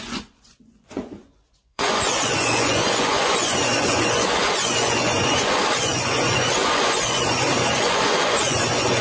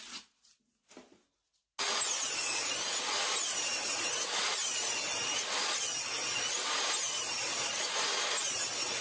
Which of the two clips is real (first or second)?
second